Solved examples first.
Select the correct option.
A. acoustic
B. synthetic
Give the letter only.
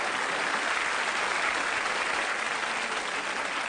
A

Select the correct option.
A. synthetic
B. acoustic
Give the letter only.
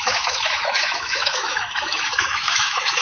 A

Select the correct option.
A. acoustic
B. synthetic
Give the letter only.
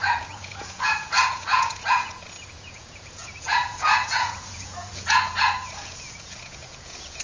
B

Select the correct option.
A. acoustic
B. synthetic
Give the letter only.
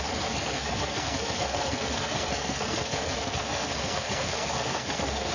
B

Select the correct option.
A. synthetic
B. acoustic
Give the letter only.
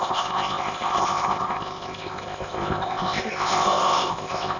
A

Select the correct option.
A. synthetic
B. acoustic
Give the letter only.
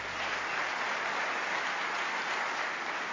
B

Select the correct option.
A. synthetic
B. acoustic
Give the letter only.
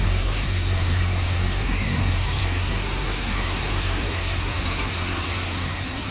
A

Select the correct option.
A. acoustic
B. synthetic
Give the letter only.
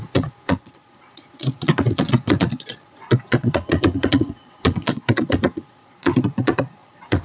B